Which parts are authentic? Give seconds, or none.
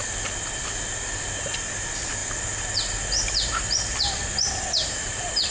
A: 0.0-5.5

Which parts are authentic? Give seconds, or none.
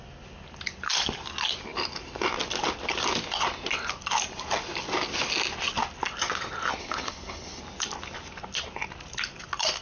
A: 0.0-6.8; 7.6-9.8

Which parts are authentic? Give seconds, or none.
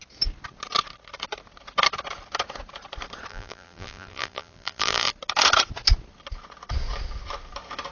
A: 0.0-3.3; 5.1-7.9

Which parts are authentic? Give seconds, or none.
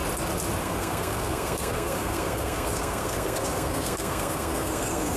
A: 0.0-0.6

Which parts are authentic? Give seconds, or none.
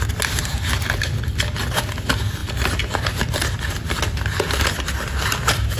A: 0.0-5.8